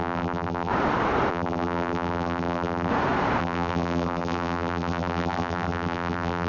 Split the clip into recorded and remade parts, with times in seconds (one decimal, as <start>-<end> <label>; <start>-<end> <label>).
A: 0.0-0.7 remade; 0.7-1.3 recorded; 1.3-2.9 remade; 2.9-3.4 recorded; 3.4-6.5 remade